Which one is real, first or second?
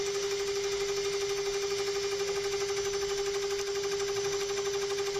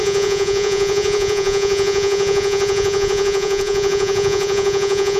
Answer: first